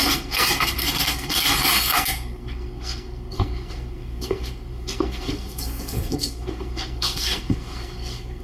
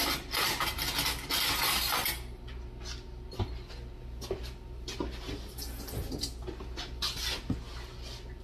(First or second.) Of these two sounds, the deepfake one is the first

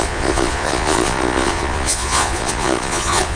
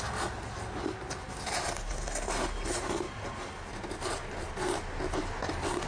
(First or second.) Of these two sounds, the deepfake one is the first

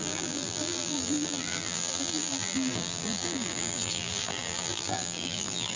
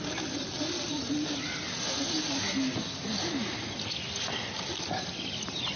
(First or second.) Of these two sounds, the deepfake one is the first